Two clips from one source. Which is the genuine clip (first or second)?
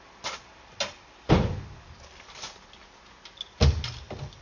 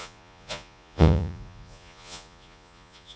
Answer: first